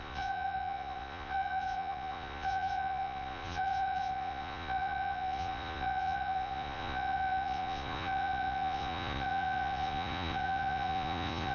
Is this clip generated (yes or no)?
yes